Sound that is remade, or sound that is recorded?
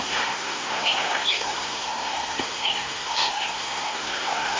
remade